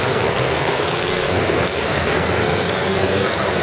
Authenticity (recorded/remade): remade